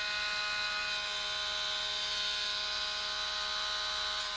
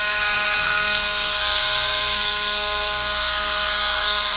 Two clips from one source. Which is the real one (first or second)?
first